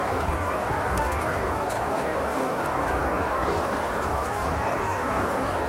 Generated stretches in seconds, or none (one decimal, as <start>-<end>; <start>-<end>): 0.0-5.7